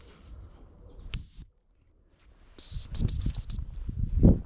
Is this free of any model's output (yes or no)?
yes